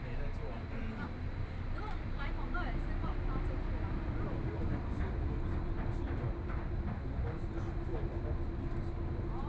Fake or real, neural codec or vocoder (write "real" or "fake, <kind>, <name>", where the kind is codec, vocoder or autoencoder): real